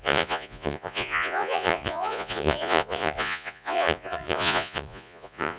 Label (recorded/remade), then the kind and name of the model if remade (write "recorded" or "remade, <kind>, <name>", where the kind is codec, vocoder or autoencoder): remade, vocoder, Vocos